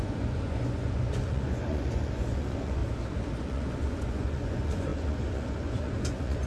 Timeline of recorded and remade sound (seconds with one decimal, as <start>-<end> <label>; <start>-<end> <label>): 0.0-2.8 remade; 2.8-3.4 recorded; 3.4-6.5 remade